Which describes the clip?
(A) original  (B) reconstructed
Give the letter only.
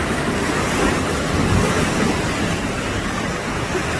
A